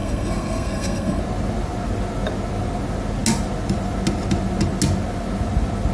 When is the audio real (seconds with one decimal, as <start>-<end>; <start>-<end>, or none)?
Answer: 1.2-5.9